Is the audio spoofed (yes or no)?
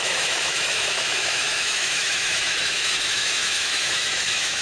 yes